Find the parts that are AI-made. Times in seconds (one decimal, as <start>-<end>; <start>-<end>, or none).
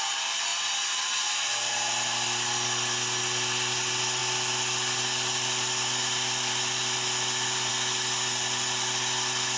none